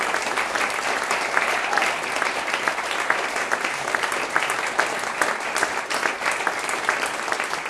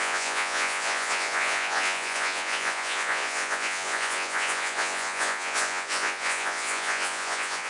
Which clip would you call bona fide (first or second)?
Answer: first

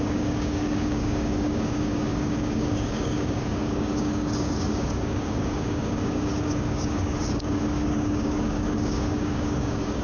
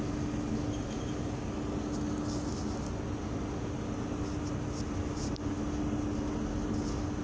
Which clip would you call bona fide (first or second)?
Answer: second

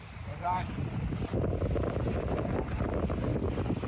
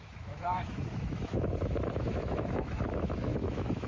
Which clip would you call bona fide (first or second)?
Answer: first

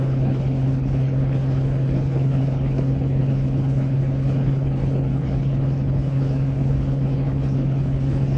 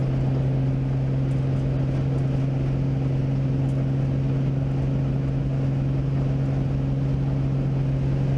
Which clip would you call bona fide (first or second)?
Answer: second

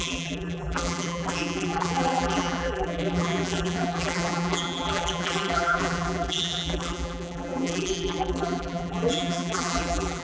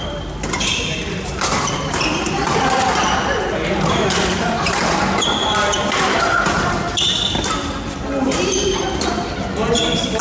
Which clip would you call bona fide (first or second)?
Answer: second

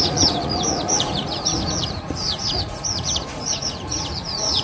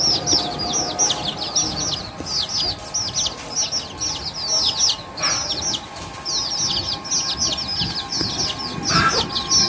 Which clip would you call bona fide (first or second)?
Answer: second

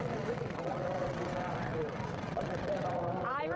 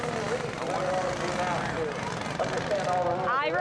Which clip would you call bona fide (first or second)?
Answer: second